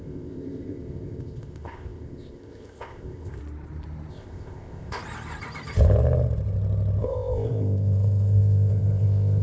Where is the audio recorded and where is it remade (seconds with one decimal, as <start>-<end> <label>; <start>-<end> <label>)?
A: 0.0-3.4 remade; 3.4-4.1 recorded; 4.1-5.0 remade; 5.0-7.0 recorded; 7.0-9.4 remade